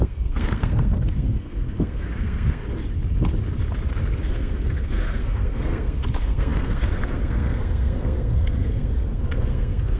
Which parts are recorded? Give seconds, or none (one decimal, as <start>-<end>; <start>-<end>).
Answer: 2.6-4.3